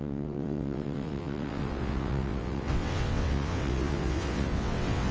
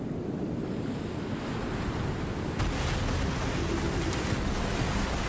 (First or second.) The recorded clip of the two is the second